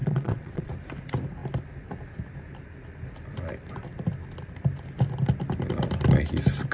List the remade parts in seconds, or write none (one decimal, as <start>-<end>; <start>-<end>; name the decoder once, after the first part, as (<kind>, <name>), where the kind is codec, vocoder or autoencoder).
0.0-0.7 (vocoder, WaveNeXt)